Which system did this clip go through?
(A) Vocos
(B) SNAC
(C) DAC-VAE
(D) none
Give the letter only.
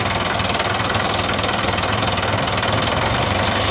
D